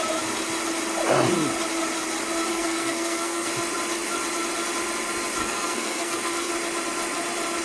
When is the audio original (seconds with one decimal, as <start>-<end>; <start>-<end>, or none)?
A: 0.0-2.5; 3.5-5.4; 6.5-7.6